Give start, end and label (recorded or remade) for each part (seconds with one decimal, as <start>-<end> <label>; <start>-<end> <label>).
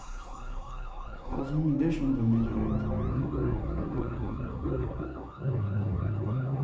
0.0-1.4 remade; 1.4-3.1 recorded; 3.1-6.6 remade